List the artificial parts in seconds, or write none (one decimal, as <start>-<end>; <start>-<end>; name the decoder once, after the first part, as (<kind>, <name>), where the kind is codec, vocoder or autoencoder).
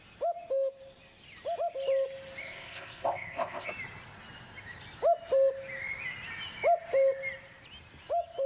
2.4-3.7 (codec, ZipCodec)